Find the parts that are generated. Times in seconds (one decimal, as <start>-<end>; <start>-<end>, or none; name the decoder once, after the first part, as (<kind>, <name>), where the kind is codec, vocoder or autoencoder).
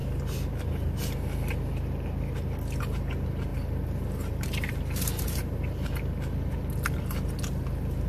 3.5-5.9 (vocoder, BigVGAN v2)